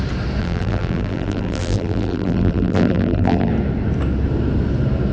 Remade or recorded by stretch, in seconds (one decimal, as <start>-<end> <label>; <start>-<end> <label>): 0.0-0.4 recorded; 0.4-3.5 remade; 3.5-5.1 recorded